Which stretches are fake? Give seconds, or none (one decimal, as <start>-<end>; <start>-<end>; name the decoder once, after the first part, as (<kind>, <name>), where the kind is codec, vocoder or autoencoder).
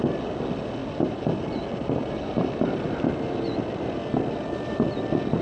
0.8-4.0 (vocoder, BigVGAN v2)